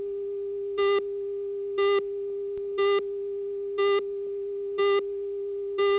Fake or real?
real